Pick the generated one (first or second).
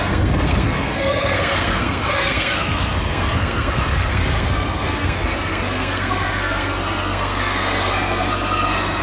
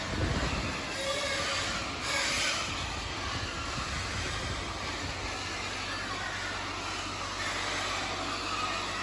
first